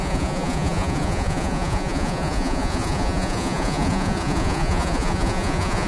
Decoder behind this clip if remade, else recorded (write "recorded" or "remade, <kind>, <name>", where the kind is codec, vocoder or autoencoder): remade, vocoder, Vocos